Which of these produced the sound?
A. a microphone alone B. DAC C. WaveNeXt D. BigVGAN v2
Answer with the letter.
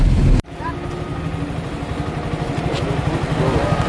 A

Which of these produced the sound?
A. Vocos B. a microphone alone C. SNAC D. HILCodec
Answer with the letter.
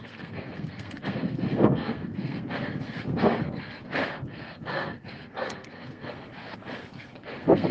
C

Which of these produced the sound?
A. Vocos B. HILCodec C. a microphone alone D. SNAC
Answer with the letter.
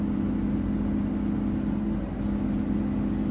C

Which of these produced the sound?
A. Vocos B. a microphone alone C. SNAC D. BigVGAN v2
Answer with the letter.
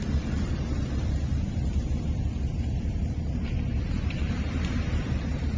D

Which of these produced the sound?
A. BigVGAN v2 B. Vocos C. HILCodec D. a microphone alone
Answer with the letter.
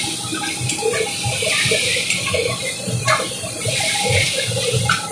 D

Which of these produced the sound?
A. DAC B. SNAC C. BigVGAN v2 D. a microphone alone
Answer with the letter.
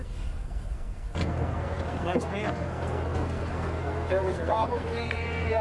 B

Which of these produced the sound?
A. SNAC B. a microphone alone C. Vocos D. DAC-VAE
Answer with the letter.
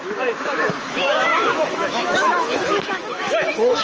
D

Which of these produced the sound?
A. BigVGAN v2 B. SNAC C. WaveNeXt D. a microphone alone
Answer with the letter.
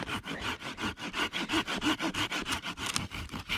D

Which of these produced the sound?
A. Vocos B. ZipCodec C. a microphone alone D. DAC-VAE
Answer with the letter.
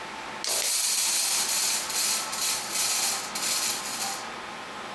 C